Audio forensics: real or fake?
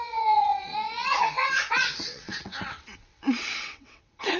fake